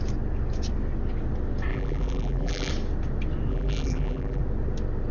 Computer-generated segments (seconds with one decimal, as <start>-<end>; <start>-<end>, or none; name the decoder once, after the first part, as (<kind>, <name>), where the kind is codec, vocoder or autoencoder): 1.7-2.7 (vocoder, BigVGAN v2); 3.5-4.4